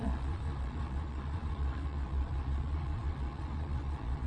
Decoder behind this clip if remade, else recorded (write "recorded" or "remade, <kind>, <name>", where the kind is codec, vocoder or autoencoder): remade, vocoder, Vocos